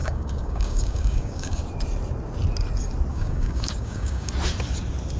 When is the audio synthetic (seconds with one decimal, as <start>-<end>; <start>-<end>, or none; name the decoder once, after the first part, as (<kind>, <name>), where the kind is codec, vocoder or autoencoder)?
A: 0.0-1.6 (codec, DAC); 3.1-4.3